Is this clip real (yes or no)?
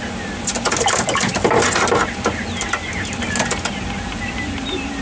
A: yes